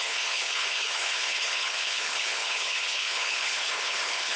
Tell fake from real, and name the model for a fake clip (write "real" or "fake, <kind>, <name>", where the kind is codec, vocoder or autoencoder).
fake, codec, HILCodec